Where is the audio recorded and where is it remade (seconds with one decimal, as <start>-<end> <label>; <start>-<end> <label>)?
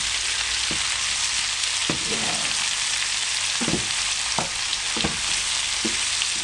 0.0-1.8 recorded; 1.8-4.3 remade; 4.3-6.4 recorded